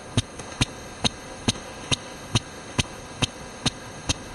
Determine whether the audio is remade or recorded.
remade